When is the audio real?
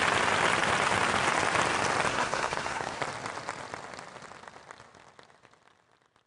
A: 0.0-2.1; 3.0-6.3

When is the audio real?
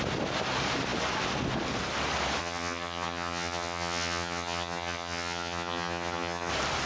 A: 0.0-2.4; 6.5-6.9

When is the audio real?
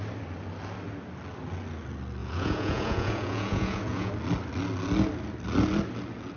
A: 0.0-2.2; 4.1-6.4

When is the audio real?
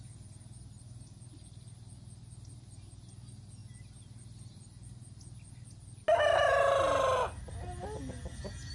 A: 0.0-8.7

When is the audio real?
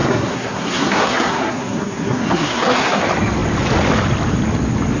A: 3.0-5.0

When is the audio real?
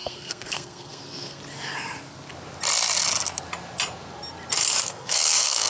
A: 1.4-4.8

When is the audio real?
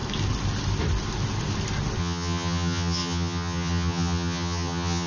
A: 0.0-2.0